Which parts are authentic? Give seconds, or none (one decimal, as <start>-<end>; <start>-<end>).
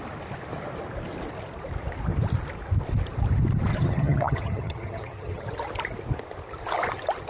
0.0-3.7; 5.5-7.3